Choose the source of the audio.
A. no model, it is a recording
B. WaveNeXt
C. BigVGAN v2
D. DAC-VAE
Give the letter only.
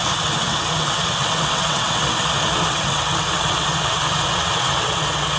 B